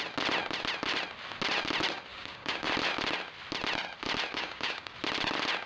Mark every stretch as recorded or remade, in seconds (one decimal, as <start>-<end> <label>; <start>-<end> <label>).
0.0-2.1 recorded; 2.1-2.7 remade; 2.7-4.3 recorded; 4.3-4.9 remade; 4.9-5.7 recorded